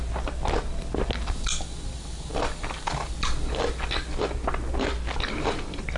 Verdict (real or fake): real